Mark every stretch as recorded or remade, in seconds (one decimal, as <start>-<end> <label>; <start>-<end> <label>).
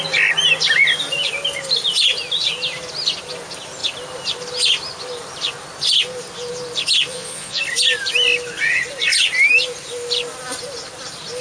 0.0-7.1 recorded; 7.1-7.6 remade; 7.6-11.4 recorded